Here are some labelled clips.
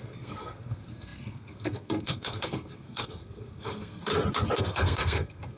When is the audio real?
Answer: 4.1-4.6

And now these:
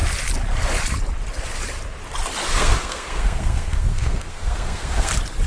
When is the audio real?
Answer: 0.0-2.5; 5.1-5.5

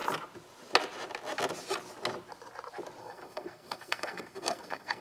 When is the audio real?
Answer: 0.0-3.0